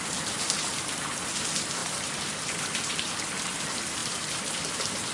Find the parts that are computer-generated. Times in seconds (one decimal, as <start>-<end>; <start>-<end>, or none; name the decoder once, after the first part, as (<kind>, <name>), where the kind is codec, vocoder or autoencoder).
1.8-3.1 (vocoder, BigVGAN v2)